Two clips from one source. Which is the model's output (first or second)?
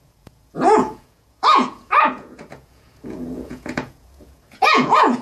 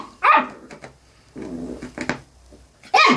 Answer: first